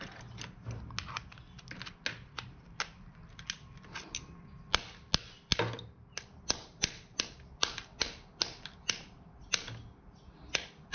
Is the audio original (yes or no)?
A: yes